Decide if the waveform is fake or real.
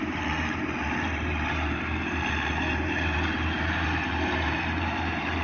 fake